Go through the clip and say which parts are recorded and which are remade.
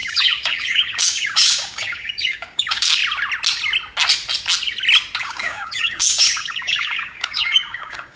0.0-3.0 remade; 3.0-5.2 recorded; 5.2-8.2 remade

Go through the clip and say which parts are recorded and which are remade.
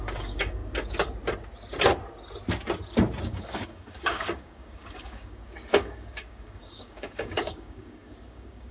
0.0-0.6 remade; 0.6-3.2 recorded; 3.2-8.7 remade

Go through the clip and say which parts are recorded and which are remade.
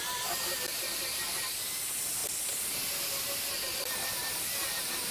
0.0-5.1 recorded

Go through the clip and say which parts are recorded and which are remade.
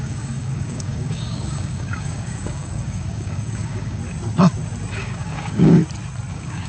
0.0-4.0 remade; 4.0-4.9 recorded; 4.9-5.8 remade; 5.8-6.3 recorded; 6.3-6.7 remade